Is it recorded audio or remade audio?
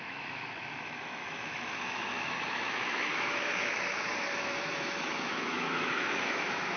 remade